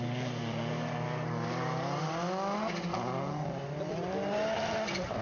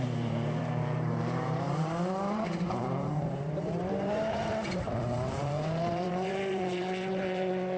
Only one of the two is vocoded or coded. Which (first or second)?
second